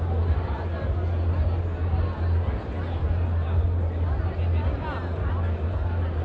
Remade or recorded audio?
recorded